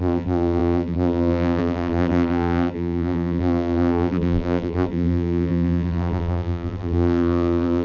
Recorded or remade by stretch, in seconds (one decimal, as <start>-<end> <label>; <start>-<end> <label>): 0.0-7.8 remade